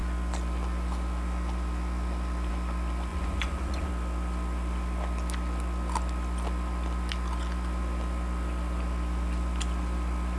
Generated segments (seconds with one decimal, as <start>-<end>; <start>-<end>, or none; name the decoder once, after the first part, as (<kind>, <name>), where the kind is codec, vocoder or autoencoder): 3.1-3.9 (vocoder, Vocos)